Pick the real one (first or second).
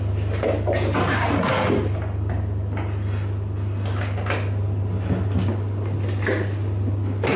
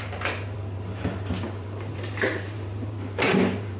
first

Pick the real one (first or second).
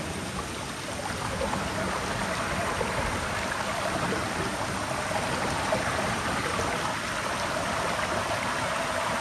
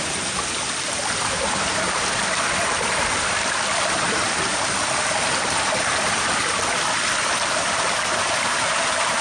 first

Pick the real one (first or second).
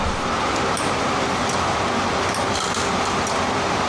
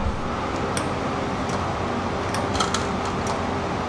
second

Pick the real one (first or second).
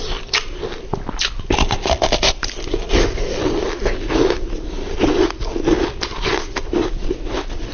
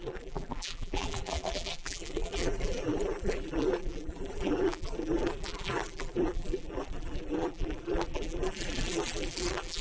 first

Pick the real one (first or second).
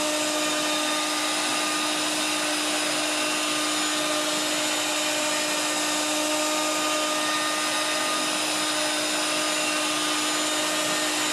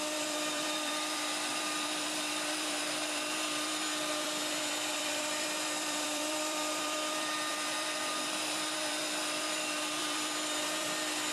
first